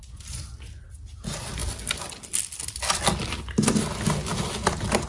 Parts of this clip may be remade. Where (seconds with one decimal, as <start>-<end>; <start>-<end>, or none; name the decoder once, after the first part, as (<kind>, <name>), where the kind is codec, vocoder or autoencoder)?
none